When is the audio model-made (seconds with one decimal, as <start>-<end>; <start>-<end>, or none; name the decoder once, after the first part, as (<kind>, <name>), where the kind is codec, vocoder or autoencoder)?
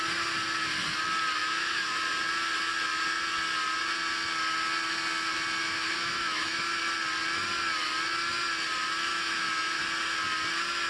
1.4-2.0 (autoencoder, DAC-VAE); 5.6-6.8; 9.1-9.8